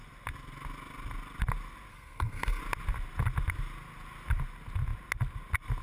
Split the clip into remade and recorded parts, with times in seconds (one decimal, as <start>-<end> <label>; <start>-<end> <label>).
0.0-1.9 recorded; 1.9-2.6 remade; 2.6-5.8 recorded